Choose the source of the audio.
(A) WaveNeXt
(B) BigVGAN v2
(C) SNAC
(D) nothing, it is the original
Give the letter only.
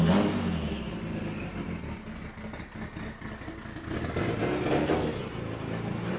D